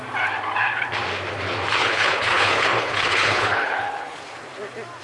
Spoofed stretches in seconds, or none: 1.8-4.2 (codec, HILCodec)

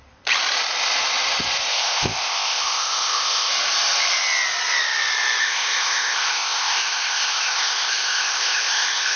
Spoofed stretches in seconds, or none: 1.7-3.5 (codec, ZipCodec); 5.4-9.2